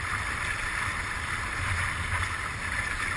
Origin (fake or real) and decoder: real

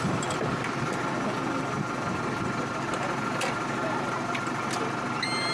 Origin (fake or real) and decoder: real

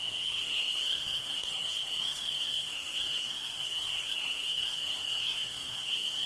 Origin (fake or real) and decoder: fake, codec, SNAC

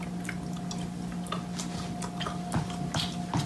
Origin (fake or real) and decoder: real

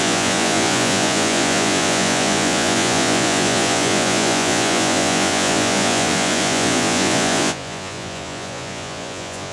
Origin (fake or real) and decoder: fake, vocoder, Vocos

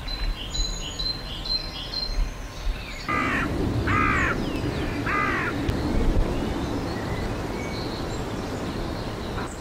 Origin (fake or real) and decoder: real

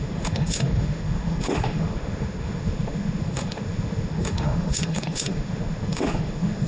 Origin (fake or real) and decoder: fake, autoencoder, DAC-VAE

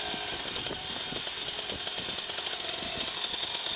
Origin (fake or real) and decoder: real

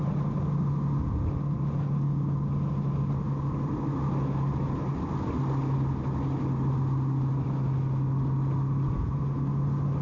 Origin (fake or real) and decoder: real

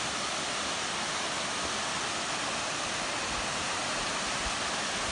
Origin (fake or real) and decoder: real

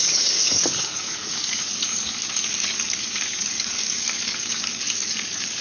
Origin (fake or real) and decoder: fake, codec, DAC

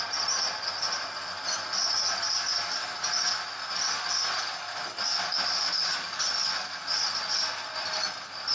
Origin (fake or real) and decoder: real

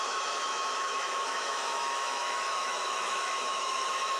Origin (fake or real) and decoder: fake, autoencoder, DAC-VAE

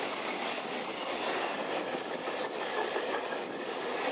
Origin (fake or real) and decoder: fake, codec, DAC